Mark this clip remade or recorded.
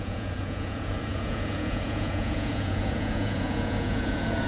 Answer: remade